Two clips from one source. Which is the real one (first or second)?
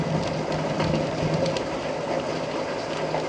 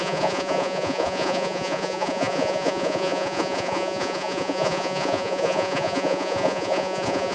first